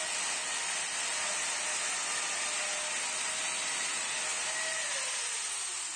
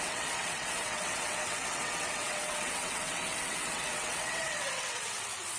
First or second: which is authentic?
first